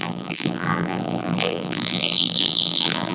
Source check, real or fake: fake